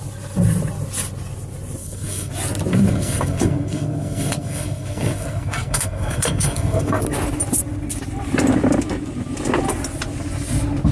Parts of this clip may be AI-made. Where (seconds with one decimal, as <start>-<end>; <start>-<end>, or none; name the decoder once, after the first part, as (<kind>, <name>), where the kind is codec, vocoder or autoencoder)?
1.8-2.3 (codec, SNAC); 2.7-7.0